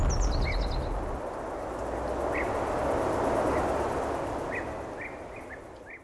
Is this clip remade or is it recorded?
recorded